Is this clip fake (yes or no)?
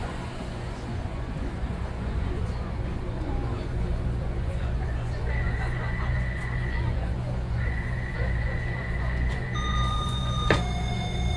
yes